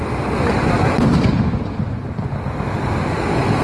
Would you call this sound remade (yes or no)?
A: no